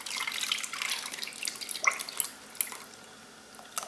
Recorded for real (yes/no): yes